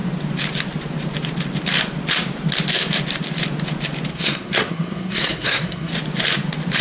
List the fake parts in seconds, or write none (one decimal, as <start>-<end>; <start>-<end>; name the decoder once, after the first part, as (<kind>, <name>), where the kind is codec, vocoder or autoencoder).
4.1-5.9 (codec, SNAC)